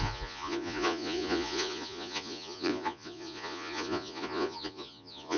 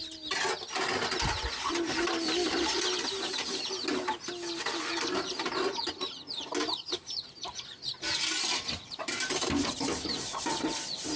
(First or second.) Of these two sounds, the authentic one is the second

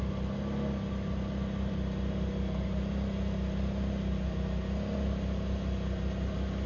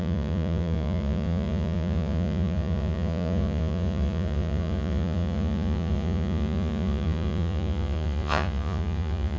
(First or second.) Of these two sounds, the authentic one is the first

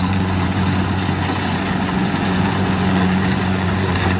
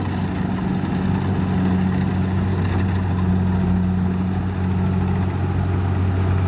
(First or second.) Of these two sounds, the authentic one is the second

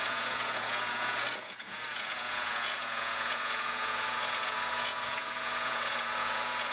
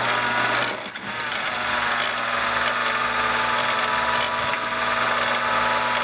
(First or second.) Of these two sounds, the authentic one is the second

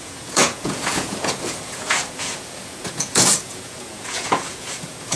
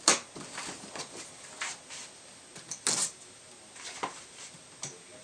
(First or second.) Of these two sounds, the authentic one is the second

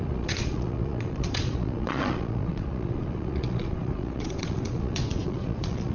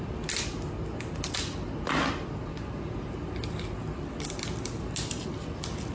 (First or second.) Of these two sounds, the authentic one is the second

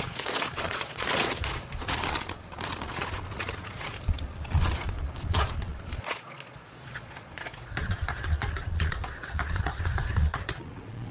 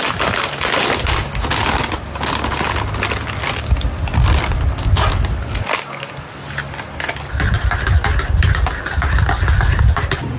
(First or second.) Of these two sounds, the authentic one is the second